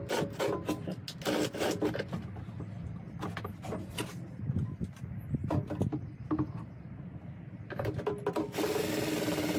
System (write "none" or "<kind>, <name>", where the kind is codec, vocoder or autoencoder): none